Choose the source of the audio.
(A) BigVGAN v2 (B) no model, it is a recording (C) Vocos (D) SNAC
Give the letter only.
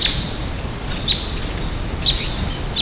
B